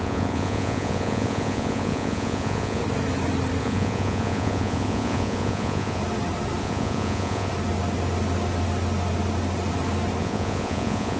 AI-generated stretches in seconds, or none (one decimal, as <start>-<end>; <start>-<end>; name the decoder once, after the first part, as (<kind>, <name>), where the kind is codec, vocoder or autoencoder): 0.0-2.8 (vocoder, Vocos); 3.6-6.0; 6.6-7.5; 10.2-11.2